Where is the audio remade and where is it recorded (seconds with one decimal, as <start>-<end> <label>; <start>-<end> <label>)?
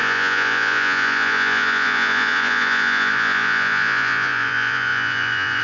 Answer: 0.0-5.6 remade